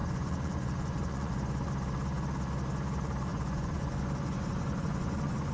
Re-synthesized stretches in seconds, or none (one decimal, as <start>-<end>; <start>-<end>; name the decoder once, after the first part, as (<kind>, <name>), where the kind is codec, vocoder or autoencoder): 0.0-1.7 (vocoder, Vocos); 3.3-5.5